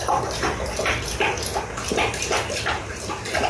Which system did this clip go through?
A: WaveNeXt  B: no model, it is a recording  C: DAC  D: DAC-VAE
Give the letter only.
B